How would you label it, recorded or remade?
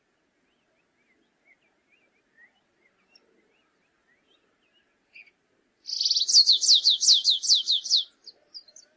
recorded